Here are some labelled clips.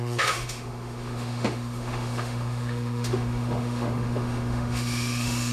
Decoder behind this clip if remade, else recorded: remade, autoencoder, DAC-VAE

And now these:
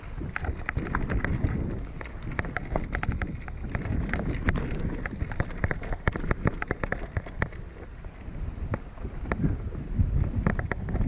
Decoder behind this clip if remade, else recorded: recorded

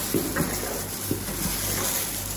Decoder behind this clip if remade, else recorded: recorded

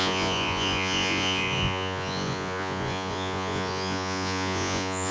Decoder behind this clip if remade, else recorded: remade, vocoder, Vocos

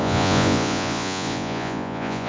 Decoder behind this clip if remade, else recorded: remade, vocoder, Vocos